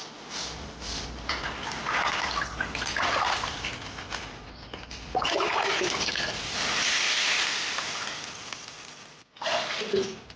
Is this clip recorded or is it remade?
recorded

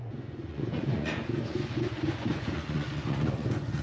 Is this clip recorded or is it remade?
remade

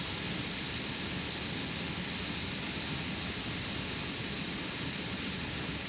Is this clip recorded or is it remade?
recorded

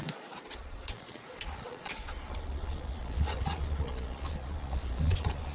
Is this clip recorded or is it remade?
remade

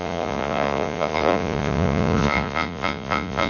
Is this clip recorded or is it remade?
remade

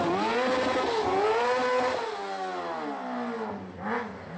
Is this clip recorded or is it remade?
recorded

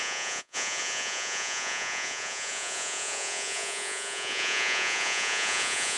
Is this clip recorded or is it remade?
remade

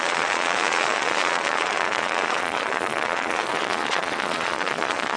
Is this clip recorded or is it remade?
remade